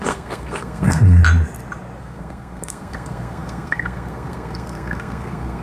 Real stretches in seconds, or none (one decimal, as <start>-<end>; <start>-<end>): 1.2-2.0